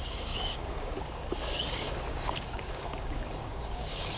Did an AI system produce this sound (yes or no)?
yes